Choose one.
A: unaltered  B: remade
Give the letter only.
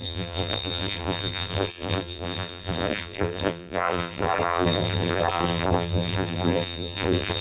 B